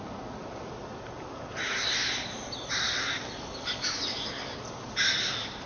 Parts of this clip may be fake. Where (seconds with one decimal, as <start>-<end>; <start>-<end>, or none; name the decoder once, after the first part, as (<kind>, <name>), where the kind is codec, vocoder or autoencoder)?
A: none